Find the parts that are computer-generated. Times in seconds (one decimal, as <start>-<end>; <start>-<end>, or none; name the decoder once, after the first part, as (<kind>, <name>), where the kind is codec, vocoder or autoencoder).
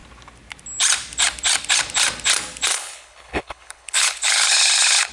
2.7-5.1 (codec, HILCodec)